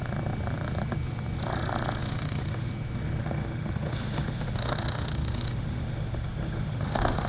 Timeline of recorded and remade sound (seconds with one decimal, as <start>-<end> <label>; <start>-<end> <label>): 0.0-2.0 recorded; 2.0-2.7 remade; 2.7-3.2 recorded; 3.2-7.3 remade